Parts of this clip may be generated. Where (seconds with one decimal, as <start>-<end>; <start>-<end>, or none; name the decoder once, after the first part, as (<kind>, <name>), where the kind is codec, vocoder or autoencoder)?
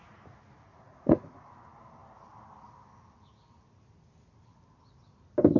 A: 0.7-1.4 (vocoder, Vocos)